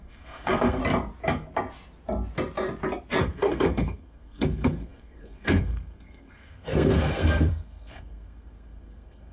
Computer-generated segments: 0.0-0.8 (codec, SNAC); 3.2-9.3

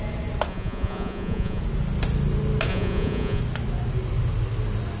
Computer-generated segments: 0.5-1.6 (vocoder, Vocos); 2.7-3.4

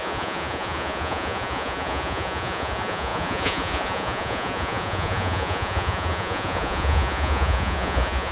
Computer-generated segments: 0.0-8.3 (vocoder, Vocos)

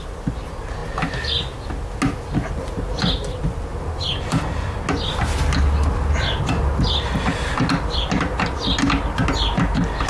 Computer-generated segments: none

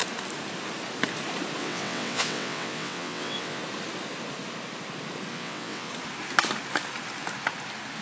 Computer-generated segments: 1.6-3.6 (vocoder, WaveNeXt); 5.3-5.9

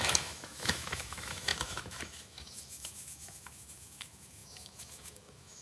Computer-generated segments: 0.0-5.6 (autoencoder, DAC-VAE)